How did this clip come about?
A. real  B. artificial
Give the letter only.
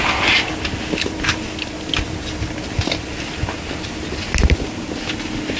A